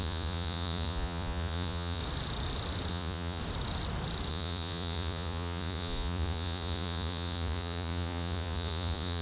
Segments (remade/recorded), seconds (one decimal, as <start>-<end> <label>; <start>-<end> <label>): 0.0-2.0 remade; 2.0-2.9 recorded; 2.9-3.4 remade; 3.4-4.3 recorded; 4.3-9.2 remade